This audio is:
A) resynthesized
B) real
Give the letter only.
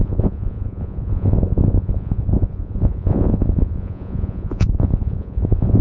A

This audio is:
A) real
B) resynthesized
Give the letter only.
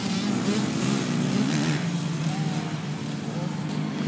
A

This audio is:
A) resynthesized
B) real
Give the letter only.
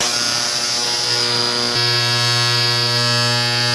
B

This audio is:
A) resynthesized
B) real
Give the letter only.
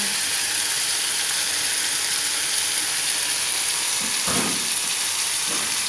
B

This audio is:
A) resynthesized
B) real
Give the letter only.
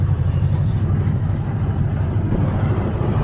A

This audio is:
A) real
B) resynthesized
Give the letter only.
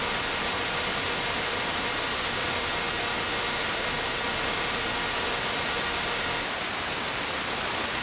A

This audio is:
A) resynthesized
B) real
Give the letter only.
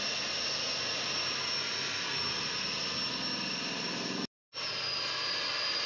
B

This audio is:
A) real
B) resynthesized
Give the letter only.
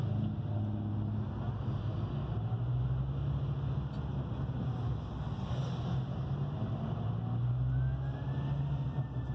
A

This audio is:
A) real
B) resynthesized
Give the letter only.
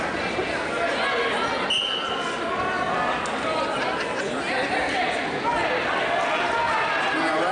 A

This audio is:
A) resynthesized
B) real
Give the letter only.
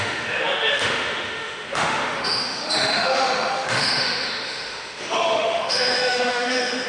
A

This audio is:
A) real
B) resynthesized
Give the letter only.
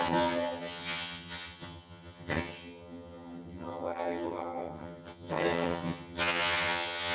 B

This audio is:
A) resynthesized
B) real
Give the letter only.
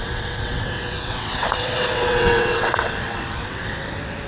A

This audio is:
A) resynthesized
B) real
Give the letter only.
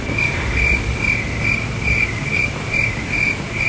B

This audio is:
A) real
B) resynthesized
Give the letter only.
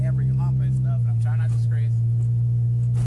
A